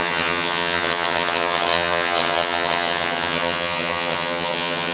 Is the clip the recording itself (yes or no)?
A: no